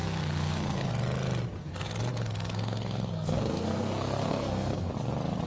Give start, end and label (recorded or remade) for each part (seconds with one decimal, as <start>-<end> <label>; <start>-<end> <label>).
0.0-0.9 remade; 0.9-1.6 recorded; 1.6-4.9 remade; 4.9-5.5 recorded